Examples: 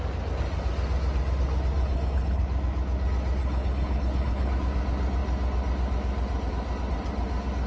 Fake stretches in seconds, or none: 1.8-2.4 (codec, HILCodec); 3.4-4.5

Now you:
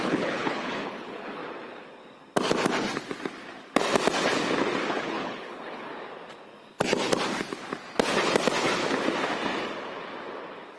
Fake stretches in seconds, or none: 0.0-1.4 (codec, HILCodec); 4.9-5.9

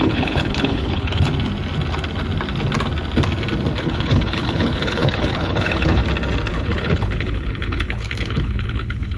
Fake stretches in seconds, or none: 0.0-1.3 (codec, HILCodec); 3.8-6.0; 6.5-9.2

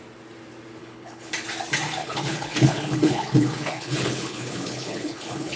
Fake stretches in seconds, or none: 0.8-1.3 (codec, HILCodec); 2.0-5.6

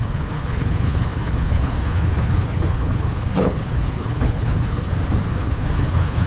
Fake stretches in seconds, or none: 0.0-4.9 (codec, HILCodec); 5.4-6.3

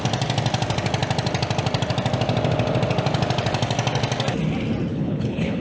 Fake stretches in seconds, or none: 4.9-5.6 (codec, HILCodec)

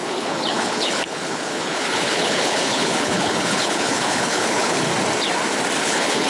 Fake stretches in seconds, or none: 0.0-4.9 (codec, HILCodec); 5.8-6.3